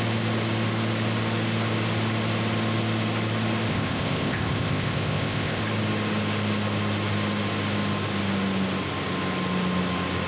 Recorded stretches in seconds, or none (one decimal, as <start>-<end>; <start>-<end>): 0.0-3.7; 5.6-10.3